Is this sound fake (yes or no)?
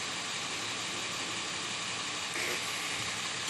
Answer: no